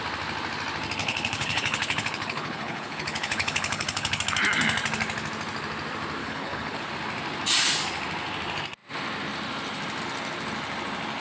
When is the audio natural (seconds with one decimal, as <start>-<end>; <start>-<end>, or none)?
0.0-1.0; 4.2-6.2; 6.9-11.2